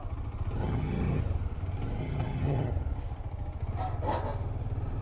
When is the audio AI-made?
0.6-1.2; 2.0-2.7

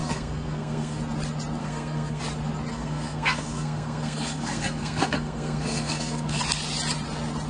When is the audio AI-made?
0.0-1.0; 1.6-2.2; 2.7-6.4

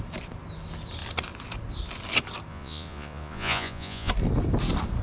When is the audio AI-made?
2.5-4.1

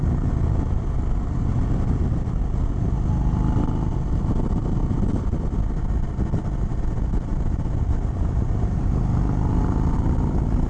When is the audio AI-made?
7.3-9.0

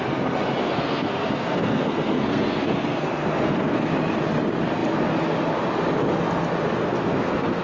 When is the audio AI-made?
0.6-3.9; 6.8-7.6

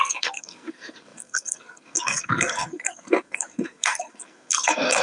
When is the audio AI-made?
0.0-5.0

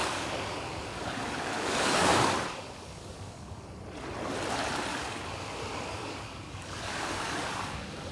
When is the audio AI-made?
0.0-3.8; 4.9-8.1

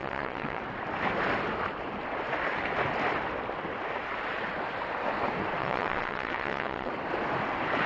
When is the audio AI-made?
0.0-0.6; 5.6-6.9